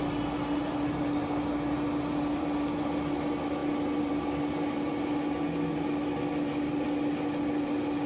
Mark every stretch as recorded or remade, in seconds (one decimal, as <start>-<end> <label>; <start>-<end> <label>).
0.0-8.1 recorded